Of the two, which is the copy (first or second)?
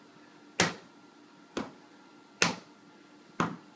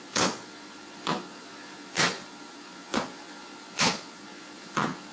second